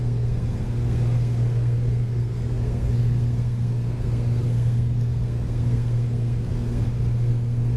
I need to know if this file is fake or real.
fake